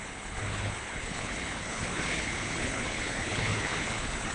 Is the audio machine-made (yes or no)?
yes